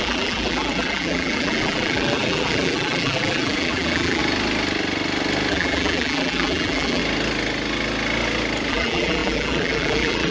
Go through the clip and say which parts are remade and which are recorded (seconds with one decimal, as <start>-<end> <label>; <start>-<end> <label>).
0.0-4.2 remade; 4.2-5.5 recorded; 5.5-7.0 remade; 7.0-8.7 recorded; 8.7-10.3 remade